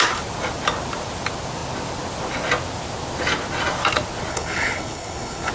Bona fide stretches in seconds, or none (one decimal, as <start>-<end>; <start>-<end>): 0.0-4.3